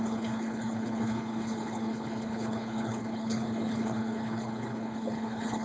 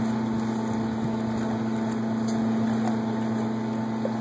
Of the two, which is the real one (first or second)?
second